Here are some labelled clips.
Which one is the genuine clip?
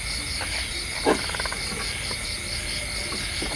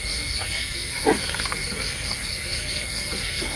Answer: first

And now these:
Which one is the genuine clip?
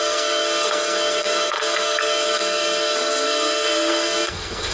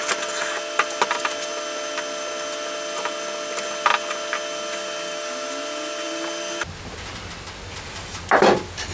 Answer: second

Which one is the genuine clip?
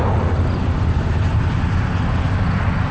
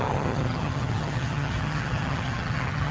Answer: first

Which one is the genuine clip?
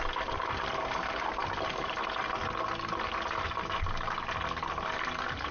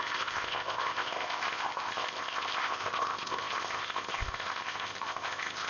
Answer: first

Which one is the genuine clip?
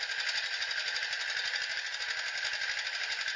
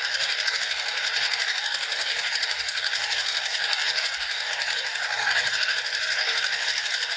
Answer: first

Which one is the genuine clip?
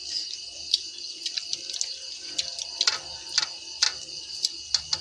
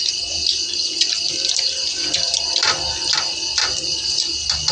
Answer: first